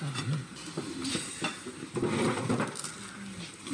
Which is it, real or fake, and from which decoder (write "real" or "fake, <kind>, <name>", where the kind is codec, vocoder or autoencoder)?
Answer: real